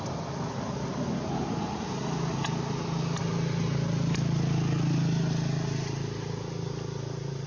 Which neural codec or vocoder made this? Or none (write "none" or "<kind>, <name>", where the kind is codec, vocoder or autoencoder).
none